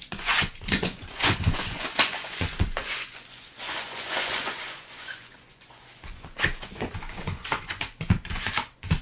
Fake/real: fake